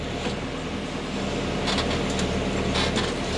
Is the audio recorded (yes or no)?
yes